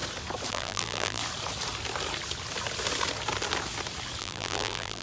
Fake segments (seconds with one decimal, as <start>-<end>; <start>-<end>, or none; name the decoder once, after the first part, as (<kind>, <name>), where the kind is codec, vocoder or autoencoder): 0.5-1.2 (vocoder, BigVGAN v2); 4.2-5.0